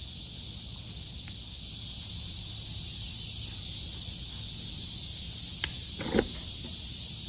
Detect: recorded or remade recorded